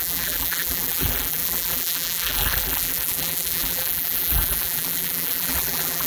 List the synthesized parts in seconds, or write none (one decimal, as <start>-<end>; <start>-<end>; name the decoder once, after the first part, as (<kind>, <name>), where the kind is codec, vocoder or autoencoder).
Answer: 0.0-6.1 (vocoder, BigVGAN v2)